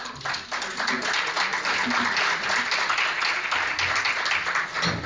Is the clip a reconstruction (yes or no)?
no